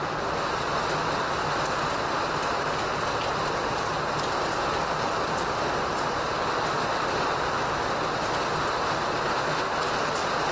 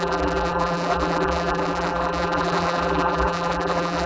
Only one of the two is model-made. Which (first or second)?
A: second